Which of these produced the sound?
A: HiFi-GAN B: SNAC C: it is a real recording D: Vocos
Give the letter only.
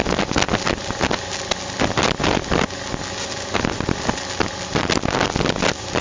C